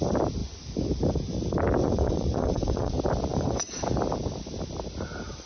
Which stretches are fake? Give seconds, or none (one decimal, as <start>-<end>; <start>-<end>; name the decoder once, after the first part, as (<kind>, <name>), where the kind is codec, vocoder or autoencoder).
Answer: 1.8-2.9 (vocoder, Vocos); 3.3-3.8